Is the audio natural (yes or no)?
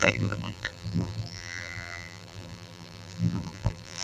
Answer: no